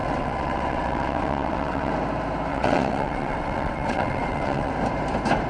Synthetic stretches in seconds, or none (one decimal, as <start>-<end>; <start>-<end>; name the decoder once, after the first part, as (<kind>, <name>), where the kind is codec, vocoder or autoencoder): 0.0-1.9 (vocoder, WaveNeXt); 2.5-4.7

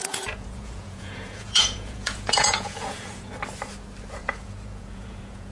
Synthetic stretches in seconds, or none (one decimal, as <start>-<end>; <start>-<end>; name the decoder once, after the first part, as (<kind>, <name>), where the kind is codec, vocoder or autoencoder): 0.0-3.3 (vocoder, Vocos); 4.2-5.5

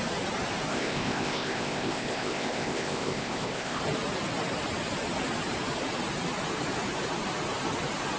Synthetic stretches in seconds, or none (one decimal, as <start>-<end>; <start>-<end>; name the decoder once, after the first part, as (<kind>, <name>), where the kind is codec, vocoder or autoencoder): 0.7-3.8 (codec, ZipCodec)

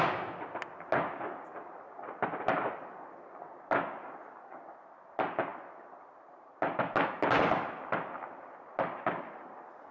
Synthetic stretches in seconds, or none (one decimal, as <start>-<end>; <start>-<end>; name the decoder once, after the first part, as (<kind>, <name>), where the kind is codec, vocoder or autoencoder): none

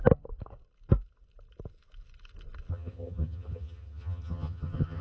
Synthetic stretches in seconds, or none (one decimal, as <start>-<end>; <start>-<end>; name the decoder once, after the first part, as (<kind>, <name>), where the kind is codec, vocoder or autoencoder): 2.7-5.0 (vocoder, HiFi-GAN)